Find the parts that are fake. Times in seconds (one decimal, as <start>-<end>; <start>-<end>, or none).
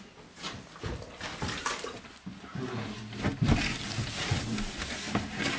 none